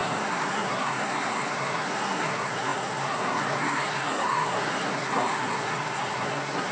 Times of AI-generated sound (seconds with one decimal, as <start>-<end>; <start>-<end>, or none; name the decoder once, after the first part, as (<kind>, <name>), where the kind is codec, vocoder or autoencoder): 0.0-6.7 (codec, SNAC)